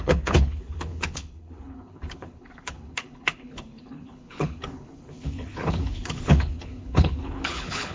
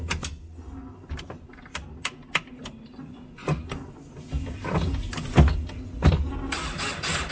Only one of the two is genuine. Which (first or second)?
second